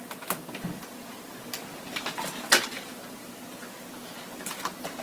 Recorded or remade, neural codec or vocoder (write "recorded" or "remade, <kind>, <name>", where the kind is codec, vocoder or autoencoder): recorded